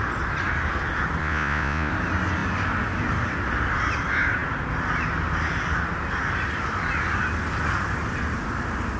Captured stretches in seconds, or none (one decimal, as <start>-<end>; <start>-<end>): 0.0-1.2; 1.9-9.0